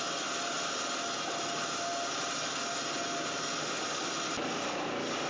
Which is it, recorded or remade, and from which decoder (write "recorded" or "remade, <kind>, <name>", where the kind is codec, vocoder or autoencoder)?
recorded